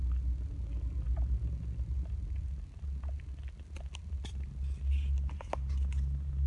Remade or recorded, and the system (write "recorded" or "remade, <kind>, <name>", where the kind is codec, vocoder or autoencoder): recorded